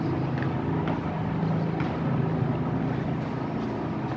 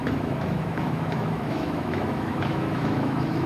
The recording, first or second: first